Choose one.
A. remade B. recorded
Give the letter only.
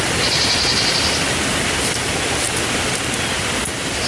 B